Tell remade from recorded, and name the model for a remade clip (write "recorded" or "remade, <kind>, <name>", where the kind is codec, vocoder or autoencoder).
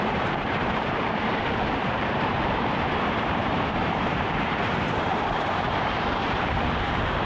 remade, vocoder, BigVGAN v2